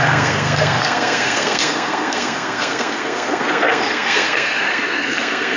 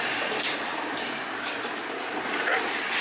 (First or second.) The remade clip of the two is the first